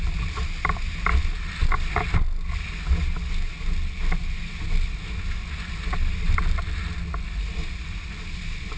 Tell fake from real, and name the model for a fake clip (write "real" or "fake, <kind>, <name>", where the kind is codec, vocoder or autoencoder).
real